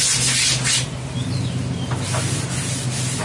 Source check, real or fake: real